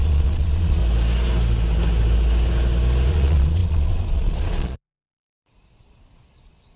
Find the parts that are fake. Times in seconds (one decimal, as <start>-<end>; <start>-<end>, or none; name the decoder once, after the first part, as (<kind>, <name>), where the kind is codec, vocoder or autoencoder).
0.0-0.8 (vocoder, Vocos); 3.1-6.8